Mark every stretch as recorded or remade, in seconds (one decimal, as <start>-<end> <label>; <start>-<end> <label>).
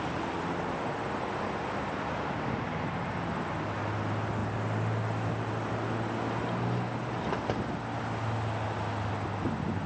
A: 0.0-9.9 recorded